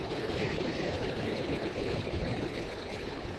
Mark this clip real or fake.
fake